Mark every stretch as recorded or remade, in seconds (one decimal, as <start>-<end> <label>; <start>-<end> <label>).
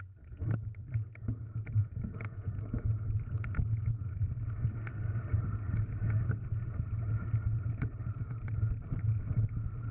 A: 0.0-1.8 recorded; 1.8-2.5 remade; 2.5-9.9 recorded